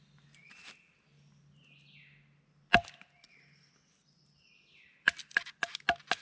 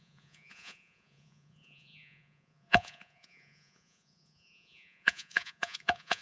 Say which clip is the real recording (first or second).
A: first